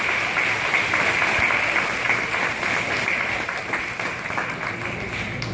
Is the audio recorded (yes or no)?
yes